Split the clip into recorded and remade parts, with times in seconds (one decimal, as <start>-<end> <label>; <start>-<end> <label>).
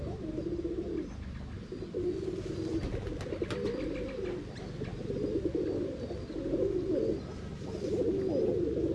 0.0-8.9 recorded